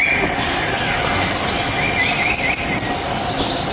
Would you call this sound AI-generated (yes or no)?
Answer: no